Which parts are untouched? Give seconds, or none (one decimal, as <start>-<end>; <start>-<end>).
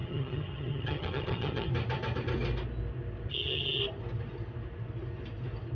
1.7-3.3; 3.8-5.8